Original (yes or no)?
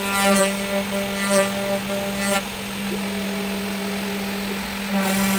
yes